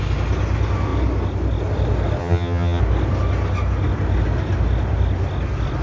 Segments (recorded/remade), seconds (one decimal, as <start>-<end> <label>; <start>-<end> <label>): 0.0-2.2 recorded; 2.2-2.8 remade; 2.8-5.8 recorded